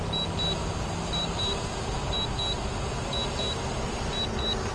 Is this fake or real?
real